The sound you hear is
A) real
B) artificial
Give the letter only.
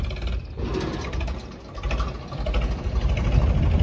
A